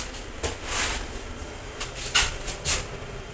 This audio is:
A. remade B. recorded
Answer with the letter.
B